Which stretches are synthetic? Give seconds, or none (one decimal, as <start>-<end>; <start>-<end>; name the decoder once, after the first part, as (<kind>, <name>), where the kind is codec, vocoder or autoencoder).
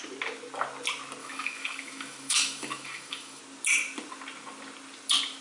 1.2-3.4 (autoencoder, DAC-VAE)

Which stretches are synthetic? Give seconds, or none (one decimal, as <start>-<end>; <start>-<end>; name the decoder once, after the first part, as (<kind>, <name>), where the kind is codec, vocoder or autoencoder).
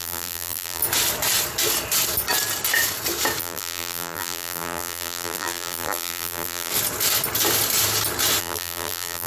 0.0-0.8 (vocoder, BigVGAN v2); 3.4-6.7; 8.4-9.3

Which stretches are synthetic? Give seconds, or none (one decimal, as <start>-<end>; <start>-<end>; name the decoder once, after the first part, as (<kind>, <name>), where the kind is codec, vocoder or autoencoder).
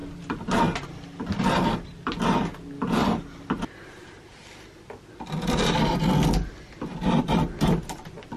none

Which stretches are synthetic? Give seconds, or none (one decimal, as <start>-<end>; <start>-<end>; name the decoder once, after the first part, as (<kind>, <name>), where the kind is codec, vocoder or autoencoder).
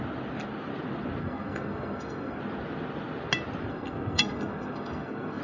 1.2-2.4 (codec, SNAC); 3.7-5.4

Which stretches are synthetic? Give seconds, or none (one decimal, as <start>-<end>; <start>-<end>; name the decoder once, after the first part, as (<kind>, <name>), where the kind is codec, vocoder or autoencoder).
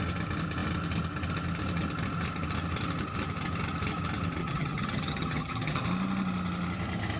4.4-5.8 (vocoder, HiFi-GAN)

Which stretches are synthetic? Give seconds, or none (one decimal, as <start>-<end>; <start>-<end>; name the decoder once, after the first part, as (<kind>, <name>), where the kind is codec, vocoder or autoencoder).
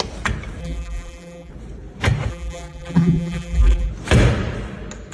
0.6-1.5 (vocoder, BigVGAN v2); 2.3-3.9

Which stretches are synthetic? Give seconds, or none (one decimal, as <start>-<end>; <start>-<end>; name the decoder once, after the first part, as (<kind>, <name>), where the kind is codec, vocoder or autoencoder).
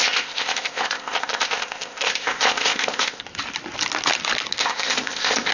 0.0-3.2 (codec, ZipCodec); 4.6-5.5